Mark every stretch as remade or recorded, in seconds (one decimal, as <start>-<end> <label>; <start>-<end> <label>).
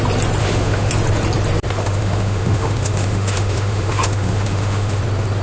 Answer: 0.0-0.4 recorded; 0.4-0.9 remade; 0.9-1.8 recorded; 1.8-5.0 remade; 5.0-5.4 recorded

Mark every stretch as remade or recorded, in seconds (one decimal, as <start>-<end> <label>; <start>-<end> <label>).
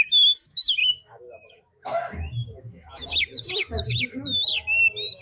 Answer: 0.0-4.5 remade; 4.5-5.2 recorded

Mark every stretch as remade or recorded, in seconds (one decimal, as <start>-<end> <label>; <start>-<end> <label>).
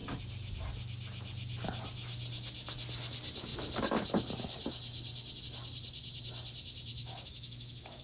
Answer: 0.0-6.9 recorded; 6.9-8.0 remade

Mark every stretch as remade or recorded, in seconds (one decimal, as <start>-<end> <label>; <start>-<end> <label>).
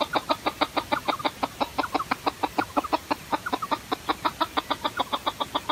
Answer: 0.0-5.7 recorded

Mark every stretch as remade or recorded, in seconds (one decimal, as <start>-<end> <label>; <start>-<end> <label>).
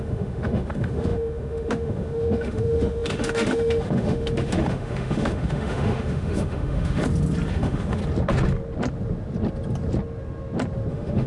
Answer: 0.0-7.0 remade; 7.0-7.5 recorded; 7.5-8.0 remade; 8.0-10.9 recorded; 10.9-11.3 remade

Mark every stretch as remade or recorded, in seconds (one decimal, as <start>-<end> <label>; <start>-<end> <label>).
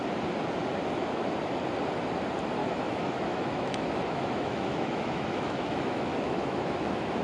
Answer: 0.0-2.6 recorded; 2.6-7.2 remade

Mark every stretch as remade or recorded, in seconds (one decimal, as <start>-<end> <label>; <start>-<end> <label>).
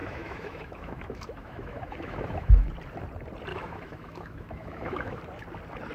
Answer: 0.0-2.7 remade; 2.7-3.5 recorded; 3.5-5.2 remade; 5.2-5.9 recorded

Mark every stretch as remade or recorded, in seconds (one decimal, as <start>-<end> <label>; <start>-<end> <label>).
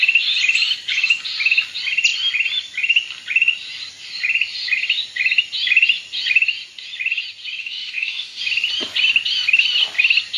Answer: 0.0-7.6 recorded; 7.6-8.4 remade; 8.4-10.4 recorded